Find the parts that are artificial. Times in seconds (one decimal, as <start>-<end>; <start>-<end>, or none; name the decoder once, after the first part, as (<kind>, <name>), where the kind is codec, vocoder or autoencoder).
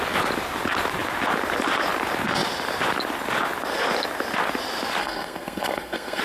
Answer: 5.0-6.2 (codec, SNAC)